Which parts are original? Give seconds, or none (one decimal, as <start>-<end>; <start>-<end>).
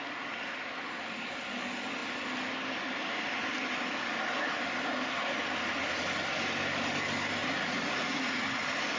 0.0-7.4; 8.4-9.0